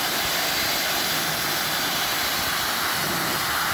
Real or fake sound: real